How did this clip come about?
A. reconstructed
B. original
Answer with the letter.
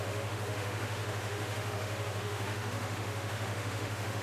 A